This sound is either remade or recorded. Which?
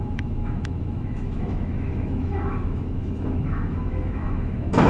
remade